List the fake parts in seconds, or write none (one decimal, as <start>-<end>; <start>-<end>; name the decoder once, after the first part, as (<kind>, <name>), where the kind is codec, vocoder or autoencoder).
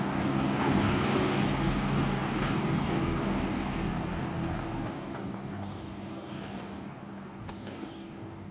0.0-8.5 (codec, DAC)